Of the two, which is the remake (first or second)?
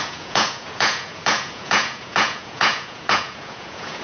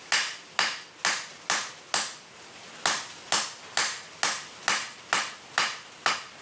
first